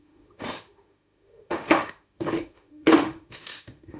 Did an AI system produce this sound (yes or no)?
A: yes